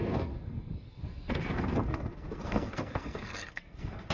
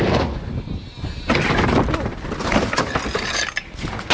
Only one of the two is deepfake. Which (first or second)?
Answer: first